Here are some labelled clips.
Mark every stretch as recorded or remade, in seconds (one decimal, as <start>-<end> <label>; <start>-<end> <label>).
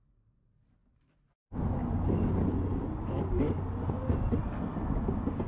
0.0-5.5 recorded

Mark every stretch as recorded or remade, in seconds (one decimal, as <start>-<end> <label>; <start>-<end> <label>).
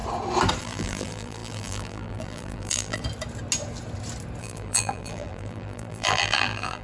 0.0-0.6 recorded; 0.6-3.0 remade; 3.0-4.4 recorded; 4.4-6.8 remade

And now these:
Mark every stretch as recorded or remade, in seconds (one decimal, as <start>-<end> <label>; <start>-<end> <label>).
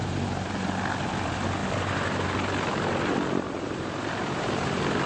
0.0-5.1 recorded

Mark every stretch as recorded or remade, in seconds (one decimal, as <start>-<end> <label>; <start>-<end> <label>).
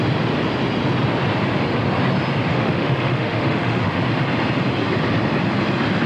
0.0-2.5 recorded; 2.5-4.0 remade; 4.0-6.1 recorded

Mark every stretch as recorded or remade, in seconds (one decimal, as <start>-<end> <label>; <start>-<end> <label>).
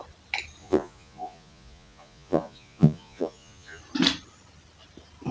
0.0-0.6 recorded; 0.6-3.8 remade; 3.8-5.3 recorded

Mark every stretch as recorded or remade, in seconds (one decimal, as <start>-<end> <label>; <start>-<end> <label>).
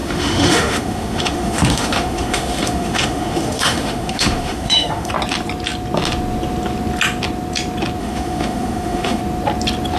0.0-5.1 remade; 5.1-8.0 recorded; 8.0-9.2 remade; 9.2-10.0 recorded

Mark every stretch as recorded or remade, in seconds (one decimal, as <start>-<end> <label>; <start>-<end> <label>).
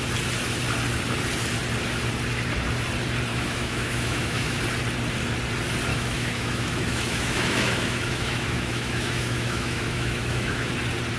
0.0-3.3 recorded; 3.3-4.6 remade; 4.6-5.9 recorded; 5.9-10.7 remade; 10.7-11.2 recorded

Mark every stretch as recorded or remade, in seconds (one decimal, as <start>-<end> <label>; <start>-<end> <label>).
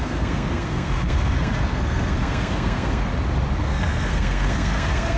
0.0-3.1 remade; 3.1-3.6 recorded; 3.6-5.2 remade